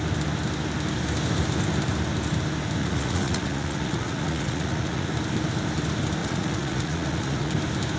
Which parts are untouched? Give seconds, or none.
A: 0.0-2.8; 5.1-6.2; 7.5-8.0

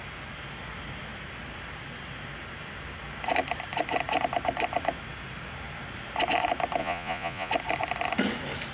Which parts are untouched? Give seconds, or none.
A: 0.0-6.8; 7.5-8.7

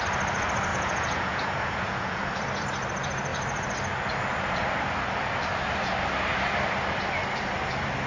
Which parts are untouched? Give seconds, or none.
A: 0.0-0.7; 2.2-8.1